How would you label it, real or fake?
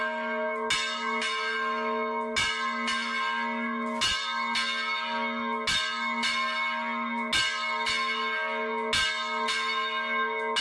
real